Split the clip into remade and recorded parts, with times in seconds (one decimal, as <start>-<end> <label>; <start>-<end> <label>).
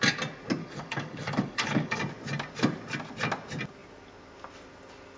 0.0-0.6 recorded; 0.6-2.0 remade; 2.0-5.2 recorded